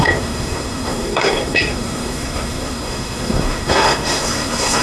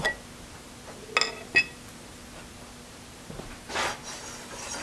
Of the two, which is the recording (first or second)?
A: second